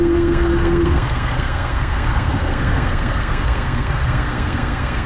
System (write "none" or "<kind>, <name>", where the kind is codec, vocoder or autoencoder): codec, SNAC